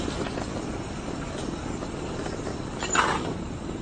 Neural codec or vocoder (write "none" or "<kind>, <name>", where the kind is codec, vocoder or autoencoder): none